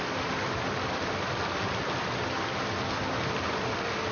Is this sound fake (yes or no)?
no